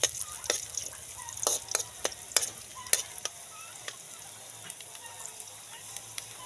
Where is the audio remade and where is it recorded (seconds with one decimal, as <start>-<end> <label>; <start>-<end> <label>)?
0.0-6.5 recorded